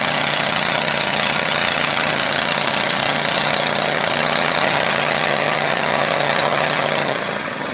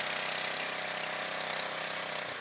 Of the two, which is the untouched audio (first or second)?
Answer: second